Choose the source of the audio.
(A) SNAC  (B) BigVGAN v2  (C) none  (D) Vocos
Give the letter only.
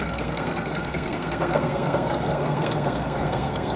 A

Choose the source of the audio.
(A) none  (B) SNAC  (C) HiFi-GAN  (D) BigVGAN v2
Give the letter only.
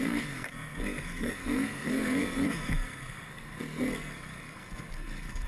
B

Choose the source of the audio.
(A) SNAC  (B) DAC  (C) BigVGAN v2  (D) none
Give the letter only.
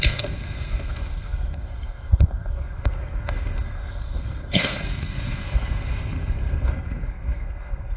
A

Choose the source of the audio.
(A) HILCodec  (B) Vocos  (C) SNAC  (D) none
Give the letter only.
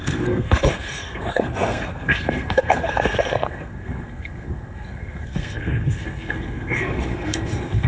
C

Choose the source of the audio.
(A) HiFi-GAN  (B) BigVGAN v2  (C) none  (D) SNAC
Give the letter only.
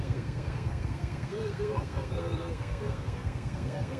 D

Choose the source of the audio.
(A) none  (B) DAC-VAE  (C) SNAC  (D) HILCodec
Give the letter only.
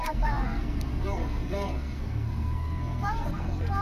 C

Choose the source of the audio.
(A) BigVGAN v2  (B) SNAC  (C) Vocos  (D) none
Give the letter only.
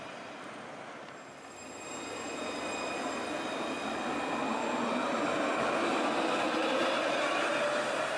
D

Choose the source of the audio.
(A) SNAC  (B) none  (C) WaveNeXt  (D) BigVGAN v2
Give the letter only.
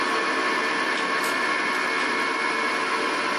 B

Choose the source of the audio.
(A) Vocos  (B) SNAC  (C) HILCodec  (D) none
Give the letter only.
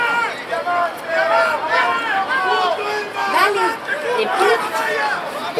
D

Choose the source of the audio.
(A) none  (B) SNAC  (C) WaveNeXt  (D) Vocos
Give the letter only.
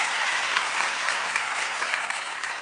B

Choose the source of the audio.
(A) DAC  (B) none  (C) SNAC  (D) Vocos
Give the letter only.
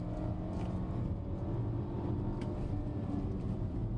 B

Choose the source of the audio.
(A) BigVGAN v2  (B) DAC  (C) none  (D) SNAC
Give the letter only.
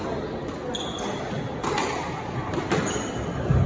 C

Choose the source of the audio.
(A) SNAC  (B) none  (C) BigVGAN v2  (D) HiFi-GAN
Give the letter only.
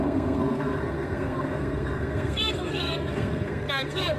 A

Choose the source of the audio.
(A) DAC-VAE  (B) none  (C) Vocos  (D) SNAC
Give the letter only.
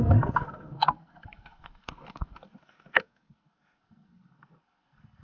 D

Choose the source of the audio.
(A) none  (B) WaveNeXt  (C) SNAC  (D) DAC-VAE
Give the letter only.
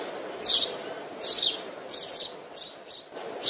A